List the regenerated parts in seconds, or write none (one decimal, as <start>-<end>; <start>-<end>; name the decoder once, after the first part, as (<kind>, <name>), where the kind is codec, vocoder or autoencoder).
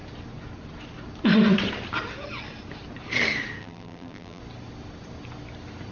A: 3.6-4.4 (vocoder, BigVGAN v2)